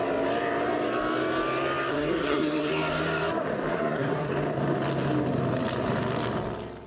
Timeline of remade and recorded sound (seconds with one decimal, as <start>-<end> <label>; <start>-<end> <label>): 0.0-1.9 recorded; 1.9-2.7 remade; 2.7-3.7 recorded; 3.7-4.3 remade; 4.3-6.9 recorded